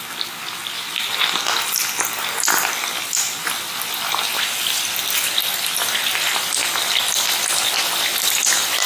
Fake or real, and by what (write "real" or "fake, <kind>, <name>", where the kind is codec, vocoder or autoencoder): real